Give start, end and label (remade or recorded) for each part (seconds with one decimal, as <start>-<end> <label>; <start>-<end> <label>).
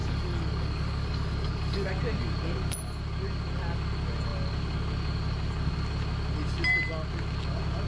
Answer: 0.0-1.9 remade; 1.9-7.9 recorded